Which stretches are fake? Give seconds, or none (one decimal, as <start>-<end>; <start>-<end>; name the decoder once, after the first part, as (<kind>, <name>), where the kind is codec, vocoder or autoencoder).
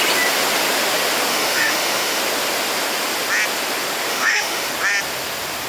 1.3-2.2 (autoencoder, DAC-VAE); 4.1-4.7